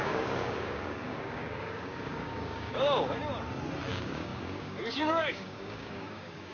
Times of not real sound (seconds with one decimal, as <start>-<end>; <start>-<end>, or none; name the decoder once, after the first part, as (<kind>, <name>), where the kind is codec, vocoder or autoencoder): 0.0-3.2 (codec, DAC); 3.9-6.5